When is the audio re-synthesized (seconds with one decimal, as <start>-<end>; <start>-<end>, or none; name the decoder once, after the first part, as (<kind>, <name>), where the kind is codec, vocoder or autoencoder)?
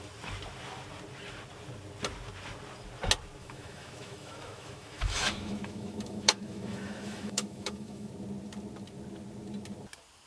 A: 3.4-8.1 (autoencoder, DAC-VAE)